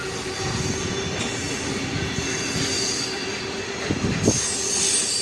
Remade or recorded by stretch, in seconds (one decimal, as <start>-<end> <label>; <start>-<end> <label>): 0.0-5.2 recorded